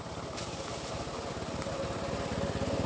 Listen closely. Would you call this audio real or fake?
fake